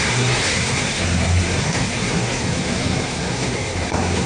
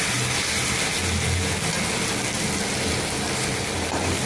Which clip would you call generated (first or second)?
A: first